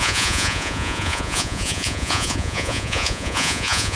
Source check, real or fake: fake